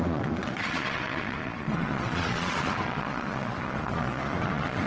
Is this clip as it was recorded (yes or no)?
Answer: no